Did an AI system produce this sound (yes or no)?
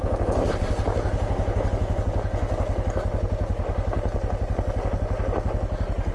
no